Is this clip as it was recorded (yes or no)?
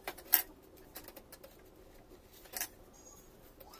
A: yes